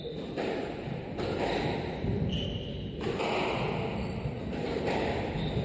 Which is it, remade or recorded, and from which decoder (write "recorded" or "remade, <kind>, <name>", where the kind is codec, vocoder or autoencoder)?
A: recorded